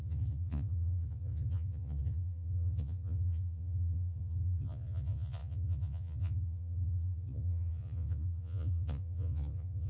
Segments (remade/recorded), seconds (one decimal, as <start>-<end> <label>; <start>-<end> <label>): 0.0-9.9 remade